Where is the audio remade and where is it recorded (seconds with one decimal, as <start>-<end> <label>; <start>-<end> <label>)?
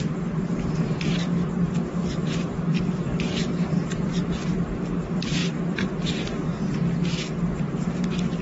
0.0-2.0 recorded; 2.0-4.1 remade; 4.1-8.4 recorded